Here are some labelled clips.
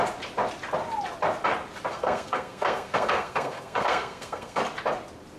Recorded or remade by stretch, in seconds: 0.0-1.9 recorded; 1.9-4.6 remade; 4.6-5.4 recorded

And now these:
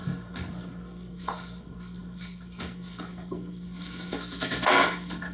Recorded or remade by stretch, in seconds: 0.0-5.3 remade